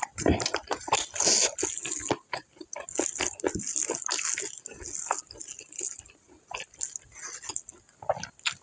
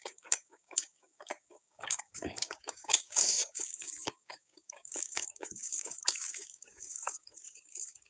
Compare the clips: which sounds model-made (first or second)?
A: second